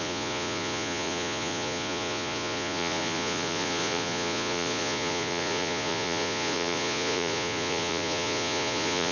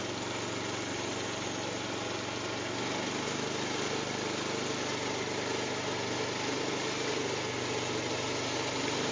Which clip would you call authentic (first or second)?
second